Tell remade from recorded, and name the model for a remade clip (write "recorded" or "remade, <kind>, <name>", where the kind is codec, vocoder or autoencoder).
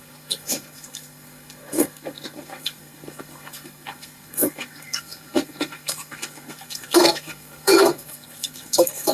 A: remade, codec, SNAC